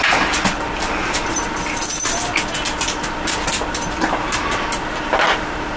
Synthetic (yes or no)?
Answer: no